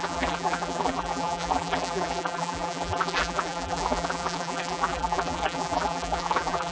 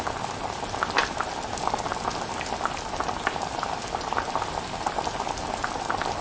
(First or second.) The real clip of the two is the second